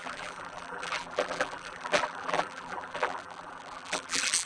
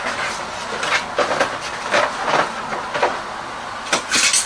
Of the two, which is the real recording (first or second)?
second